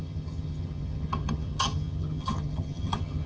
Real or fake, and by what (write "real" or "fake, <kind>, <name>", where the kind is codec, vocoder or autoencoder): fake, vocoder, HiFi-GAN